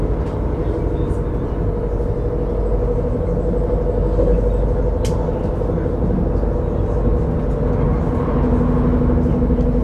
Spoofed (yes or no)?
no